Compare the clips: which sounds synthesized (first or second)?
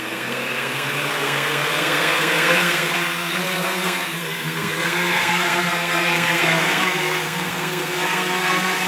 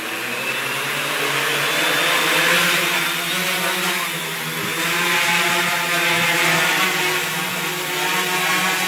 first